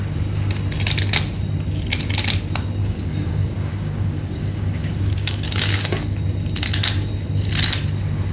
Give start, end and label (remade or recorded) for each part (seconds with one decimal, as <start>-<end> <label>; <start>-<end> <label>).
0.0-2.8 recorded; 2.8-6.0 remade; 6.0-8.3 recorded